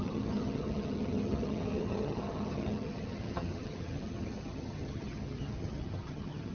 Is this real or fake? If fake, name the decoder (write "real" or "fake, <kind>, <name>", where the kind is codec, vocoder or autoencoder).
fake, vocoder, HiFi-GAN